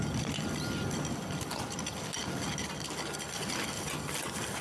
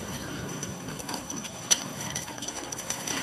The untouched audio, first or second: first